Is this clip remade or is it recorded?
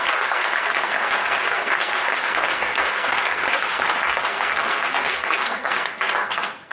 remade